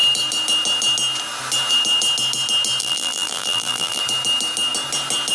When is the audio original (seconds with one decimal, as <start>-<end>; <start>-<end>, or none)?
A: 0.0-2.8; 4.0-5.3